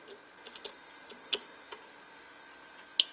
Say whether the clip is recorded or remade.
recorded